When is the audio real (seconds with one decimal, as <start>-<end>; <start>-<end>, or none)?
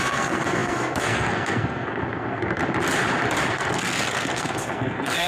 2.6-3.5